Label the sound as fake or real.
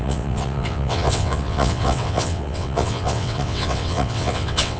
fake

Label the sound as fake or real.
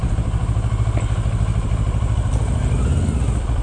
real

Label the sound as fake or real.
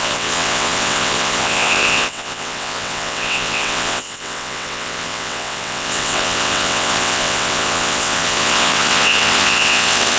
fake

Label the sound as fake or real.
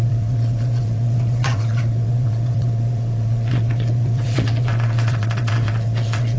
fake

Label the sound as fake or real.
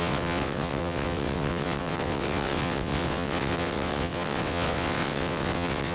fake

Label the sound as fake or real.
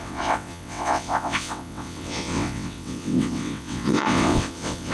fake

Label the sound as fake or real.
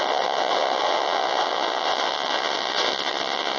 fake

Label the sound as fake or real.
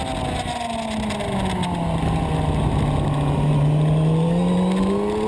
real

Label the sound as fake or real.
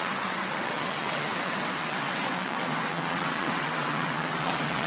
fake